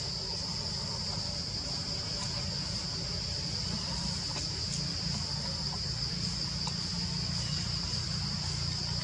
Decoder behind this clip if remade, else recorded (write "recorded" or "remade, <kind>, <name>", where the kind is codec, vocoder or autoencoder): recorded